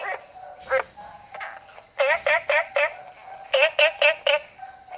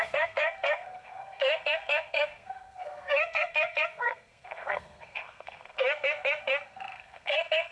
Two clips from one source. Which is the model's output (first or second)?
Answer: second